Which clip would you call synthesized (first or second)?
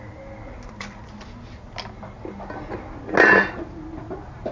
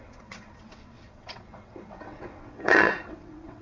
second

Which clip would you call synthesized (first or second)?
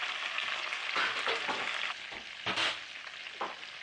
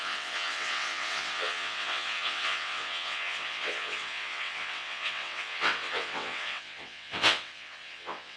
second